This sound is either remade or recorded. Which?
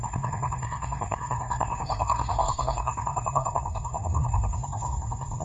remade